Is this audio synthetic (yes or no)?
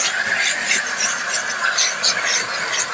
no